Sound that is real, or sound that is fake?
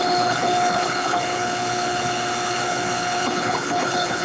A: fake